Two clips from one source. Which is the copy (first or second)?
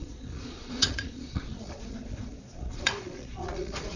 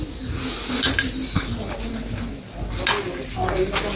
first